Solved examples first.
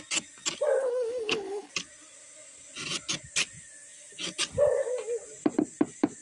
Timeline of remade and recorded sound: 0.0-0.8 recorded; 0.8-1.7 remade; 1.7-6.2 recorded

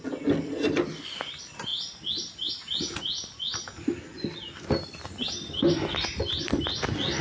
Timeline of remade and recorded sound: 0.0-7.2 recorded

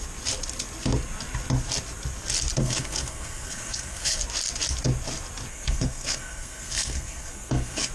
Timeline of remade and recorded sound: 0.0-2.6 recorded; 2.6-4.2 remade; 4.2-5.5 recorded; 5.5-7.9 remade

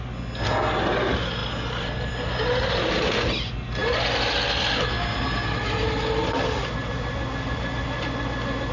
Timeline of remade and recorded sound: 0.0-8.7 recorded

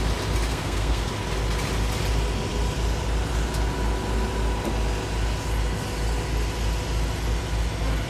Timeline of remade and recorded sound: 0.0-0.5 recorded; 0.5-1.1 remade; 1.1-8.1 recorded

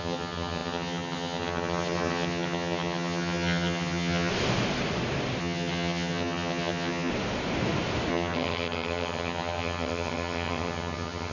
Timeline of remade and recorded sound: 0.0-4.3 remade; 4.3-5.4 recorded; 5.4-7.1 remade; 7.1-8.1 recorded; 8.1-11.3 remade

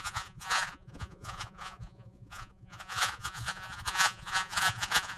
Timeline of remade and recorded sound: 0.0-5.2 remade

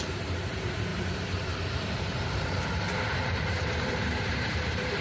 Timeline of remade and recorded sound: 0.0-5.0 remade